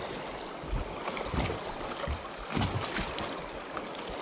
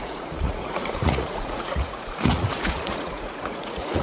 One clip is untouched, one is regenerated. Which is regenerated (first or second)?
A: second